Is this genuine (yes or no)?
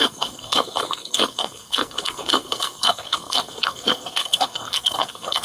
no